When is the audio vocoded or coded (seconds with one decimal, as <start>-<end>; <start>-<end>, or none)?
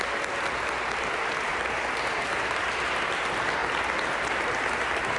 1.5-2.9; 3.6-5.2